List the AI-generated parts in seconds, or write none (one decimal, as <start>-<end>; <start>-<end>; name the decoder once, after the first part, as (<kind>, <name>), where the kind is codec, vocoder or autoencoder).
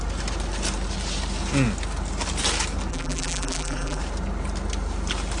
2.9-4.0 (vocoder, BigVGAN v2)